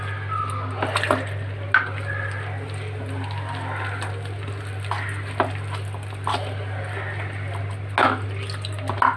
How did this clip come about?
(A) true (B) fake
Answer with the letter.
A